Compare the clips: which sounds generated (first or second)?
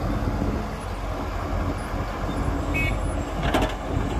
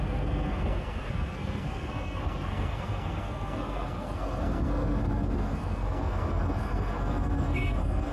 second